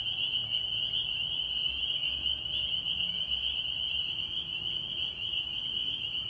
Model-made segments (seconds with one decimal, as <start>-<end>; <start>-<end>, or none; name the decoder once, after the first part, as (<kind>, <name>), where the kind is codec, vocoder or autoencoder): none